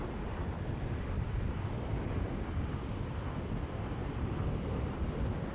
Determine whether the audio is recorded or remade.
recorded